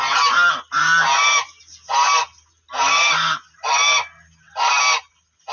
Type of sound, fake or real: real